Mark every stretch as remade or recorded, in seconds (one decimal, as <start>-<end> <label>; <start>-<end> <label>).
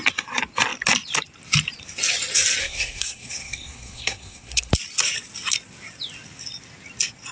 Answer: 0.0-2.6 recorded; 2.6-4.7 remade; 4.7-7.3 recorded